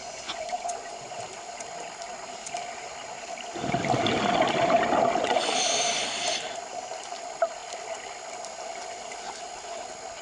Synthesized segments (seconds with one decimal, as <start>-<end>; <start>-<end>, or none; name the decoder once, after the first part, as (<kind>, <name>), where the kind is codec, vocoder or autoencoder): 0.0-1.2 (vocoder, Vocos)